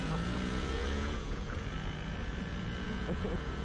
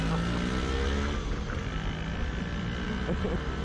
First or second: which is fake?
first